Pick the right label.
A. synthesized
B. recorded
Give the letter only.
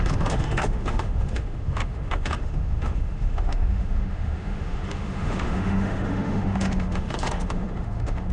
A